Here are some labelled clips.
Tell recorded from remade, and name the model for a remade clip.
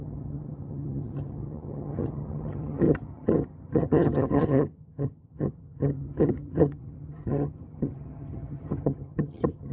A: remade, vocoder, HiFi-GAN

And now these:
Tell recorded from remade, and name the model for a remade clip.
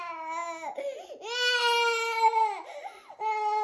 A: recorded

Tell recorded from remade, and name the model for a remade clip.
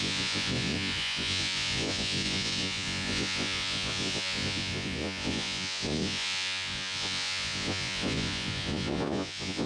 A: remade, vocoder, Vocos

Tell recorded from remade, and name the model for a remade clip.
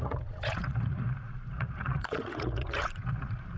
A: remade, vocoder, Vocos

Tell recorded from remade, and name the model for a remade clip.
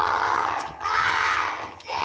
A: remade, vocoder, HiFi-GAN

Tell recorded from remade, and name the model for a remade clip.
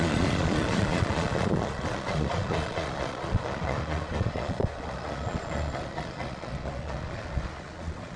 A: remade, vocoder, Vocos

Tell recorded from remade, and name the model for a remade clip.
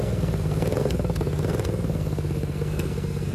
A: remade, codec, SNAC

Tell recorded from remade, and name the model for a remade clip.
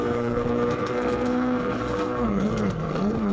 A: remade, codec, SNAC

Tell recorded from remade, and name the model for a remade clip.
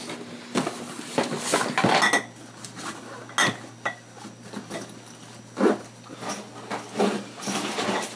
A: recorded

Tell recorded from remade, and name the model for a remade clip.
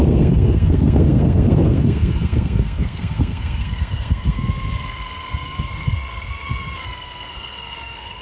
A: remade, codec, SNAC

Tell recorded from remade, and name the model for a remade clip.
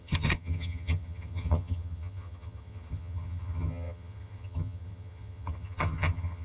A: remade, vocoder, HiFi-GAN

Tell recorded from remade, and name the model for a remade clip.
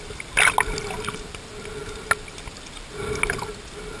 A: recorded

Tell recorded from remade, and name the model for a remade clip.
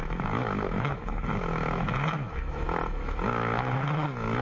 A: remade, autoencoder, DAC-VAE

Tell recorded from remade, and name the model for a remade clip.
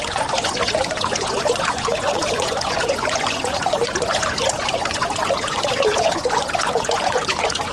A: remade, vocoder, Vocos